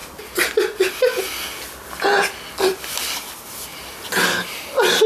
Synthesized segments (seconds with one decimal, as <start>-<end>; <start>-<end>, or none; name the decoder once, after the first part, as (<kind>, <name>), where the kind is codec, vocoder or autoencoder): none